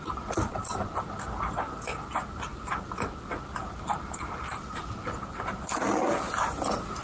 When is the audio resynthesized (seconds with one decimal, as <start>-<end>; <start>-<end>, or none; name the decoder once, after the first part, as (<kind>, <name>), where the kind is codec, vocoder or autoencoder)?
none